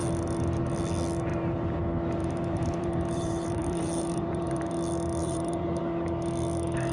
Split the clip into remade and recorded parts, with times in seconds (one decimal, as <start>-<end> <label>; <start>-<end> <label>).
0.0-1.3 recorded; 1.3-1.8 remade; 1.8-2.2 recorded; 2.2-4.7 remade; 4.7-5.2 recorded; 5.2-5.8 remade; 5.8-6.9 recorded